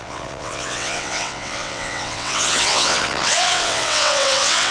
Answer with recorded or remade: remade